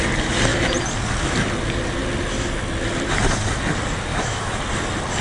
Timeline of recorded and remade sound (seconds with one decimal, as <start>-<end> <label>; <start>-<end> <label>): 0.0-4.1 recorded; 4.1-4.6 remade; 4.6-5.2 recorded